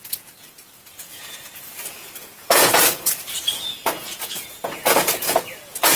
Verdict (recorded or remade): remade